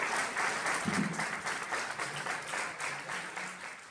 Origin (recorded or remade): recorded